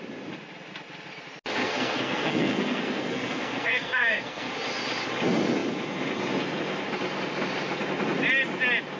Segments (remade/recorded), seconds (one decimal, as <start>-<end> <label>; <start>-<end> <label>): 0.0-1.6 recorded; 1.6-4.5 remade; 4.5-9.0 recorded